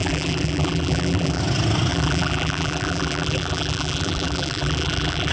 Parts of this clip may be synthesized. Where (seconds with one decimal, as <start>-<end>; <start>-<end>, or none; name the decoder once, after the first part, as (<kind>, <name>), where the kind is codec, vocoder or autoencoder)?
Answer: 0.0-1.4 (vocoder, BigVGAN v2); 1.9-5.3